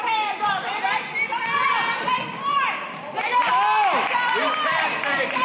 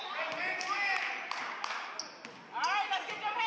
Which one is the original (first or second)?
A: second